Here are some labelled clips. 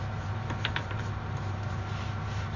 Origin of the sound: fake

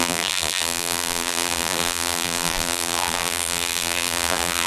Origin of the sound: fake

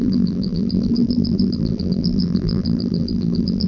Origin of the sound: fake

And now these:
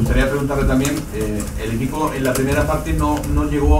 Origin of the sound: real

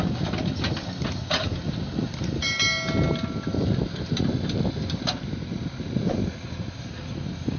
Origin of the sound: real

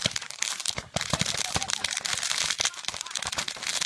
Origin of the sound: fake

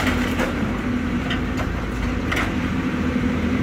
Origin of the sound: fake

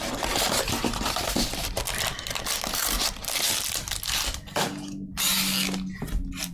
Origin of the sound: real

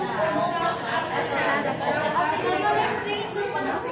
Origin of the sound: real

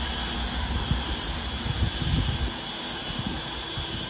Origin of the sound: real